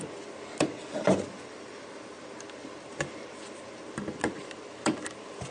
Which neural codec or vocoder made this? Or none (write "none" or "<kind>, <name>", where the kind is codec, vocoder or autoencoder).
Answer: none